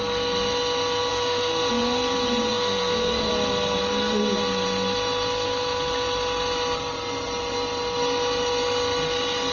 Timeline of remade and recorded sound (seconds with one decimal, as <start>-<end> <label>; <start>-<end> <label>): 0.0-1.1 recorded; 1.1-1.7 remade; 1.7-2.5 recorded; 2.5-3.3 remade; 3.3-9.5 recorded